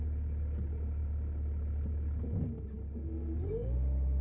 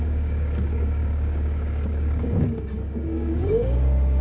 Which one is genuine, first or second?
first